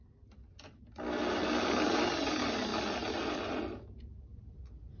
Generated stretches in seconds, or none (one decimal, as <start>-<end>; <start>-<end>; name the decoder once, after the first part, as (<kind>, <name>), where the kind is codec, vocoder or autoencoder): none